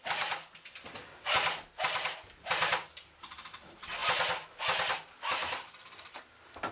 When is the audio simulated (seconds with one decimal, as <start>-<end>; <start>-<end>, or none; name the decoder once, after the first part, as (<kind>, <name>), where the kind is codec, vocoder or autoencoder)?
0.0-1.0 (vocoder, BigVGAN v2); 3.3-4.0; 5.8-6.7